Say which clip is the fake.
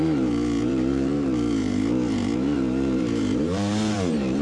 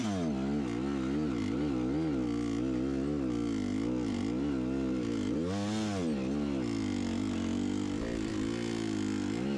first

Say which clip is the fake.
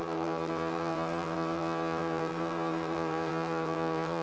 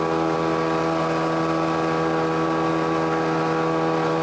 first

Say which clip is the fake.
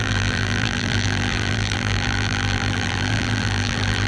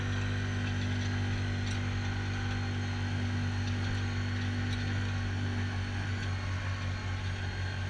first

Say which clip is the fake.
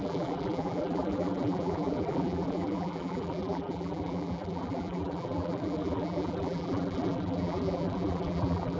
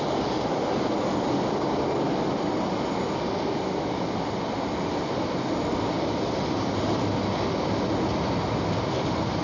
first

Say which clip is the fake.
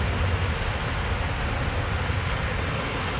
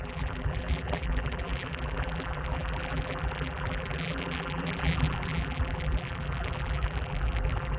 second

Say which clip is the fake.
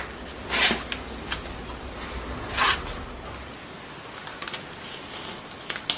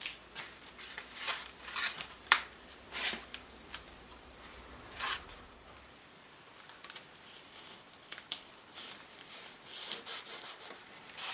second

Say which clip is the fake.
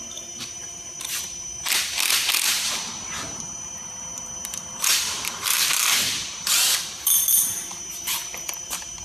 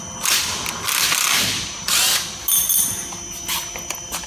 first